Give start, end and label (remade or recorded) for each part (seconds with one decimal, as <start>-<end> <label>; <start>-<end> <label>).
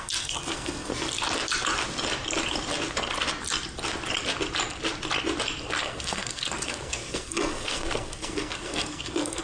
0.0-0.9 remade; 0.9-5.8 recorded; 5.8-9.4 remade